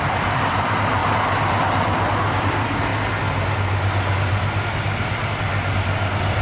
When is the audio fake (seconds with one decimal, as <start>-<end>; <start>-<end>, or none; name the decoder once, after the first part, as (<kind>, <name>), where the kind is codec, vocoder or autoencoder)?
0.0-1.0 (vocoder, BigVGAN v2); 2.4-2.9; 4.7-6.4